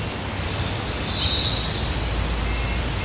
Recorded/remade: recorded